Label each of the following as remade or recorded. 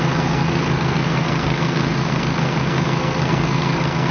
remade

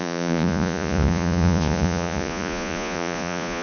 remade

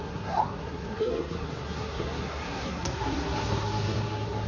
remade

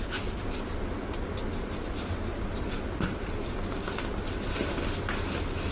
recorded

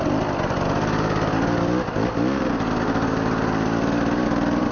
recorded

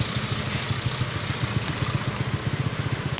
recorded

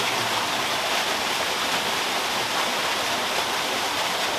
recorded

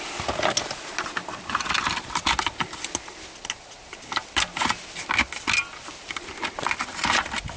recorded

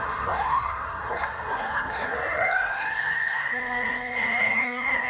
remade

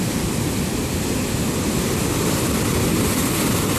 recorded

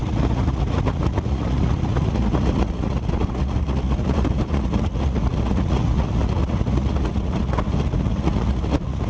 remade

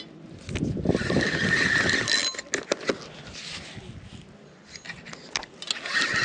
recorded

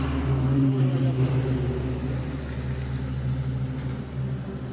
recorded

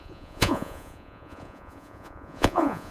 remade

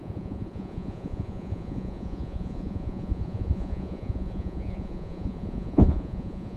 remade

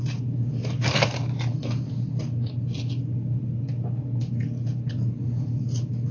recorded